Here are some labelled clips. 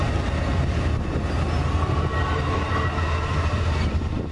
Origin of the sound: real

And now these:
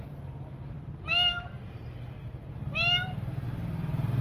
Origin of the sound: fake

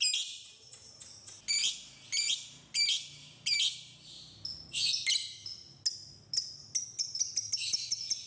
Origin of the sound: real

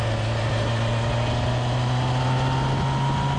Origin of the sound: real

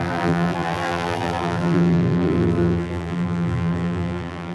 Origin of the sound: fake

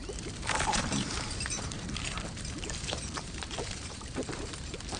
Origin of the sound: fake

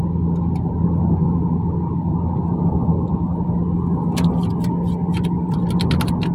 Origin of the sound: real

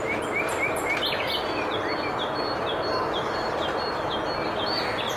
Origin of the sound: real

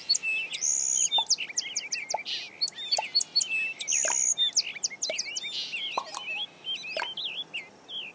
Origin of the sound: real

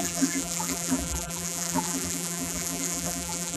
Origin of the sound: fake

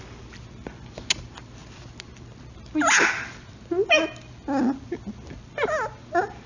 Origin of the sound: real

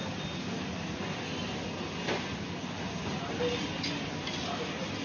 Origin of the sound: real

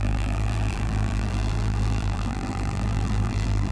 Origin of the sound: fake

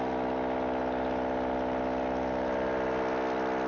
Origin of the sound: real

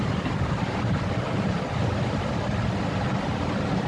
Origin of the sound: real